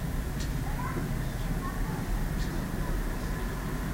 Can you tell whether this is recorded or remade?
recorded